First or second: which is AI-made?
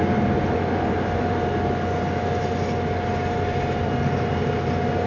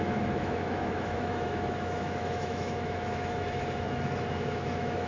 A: second